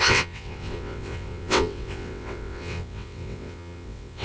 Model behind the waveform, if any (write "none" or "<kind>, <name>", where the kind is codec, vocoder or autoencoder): vocoder, WaveNeXt